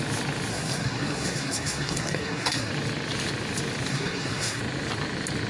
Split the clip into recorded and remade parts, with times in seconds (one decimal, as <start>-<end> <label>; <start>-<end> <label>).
0.0-0.5 recorded; 0.5-2.7 remade; 2.7-3.9 recorded; 3.9-4.6 remade; 4.6-5.5 recorded